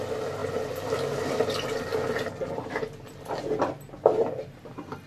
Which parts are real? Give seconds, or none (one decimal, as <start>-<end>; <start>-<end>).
0.0-0.4; 1.3-5.1